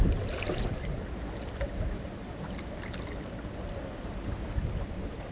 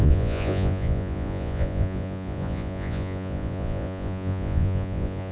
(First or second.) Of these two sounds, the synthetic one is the second